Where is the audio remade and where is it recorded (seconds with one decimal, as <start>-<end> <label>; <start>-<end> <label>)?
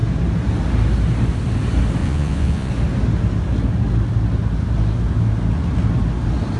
0.0-2.0 recorded; 2.0-2.7 remade; 2.7-6.6 recorded